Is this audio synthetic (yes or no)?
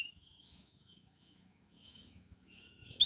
yes